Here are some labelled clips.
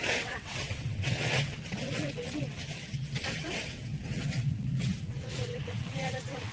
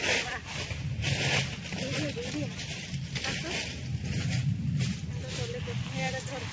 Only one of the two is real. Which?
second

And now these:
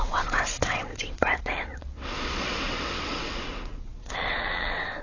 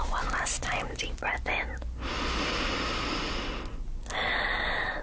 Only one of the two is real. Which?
second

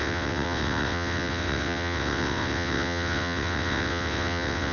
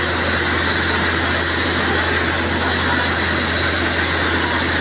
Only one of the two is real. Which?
second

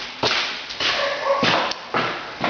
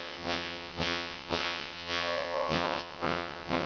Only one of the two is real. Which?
first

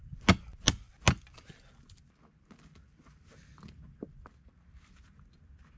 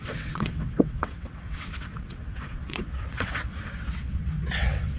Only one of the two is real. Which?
first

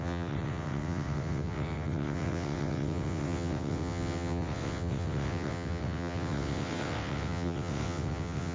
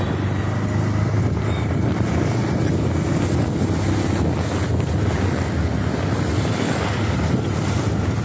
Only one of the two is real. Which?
second